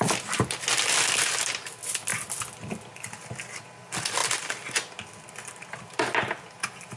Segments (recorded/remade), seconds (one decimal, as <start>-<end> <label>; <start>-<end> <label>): 0.0-7.0 recorded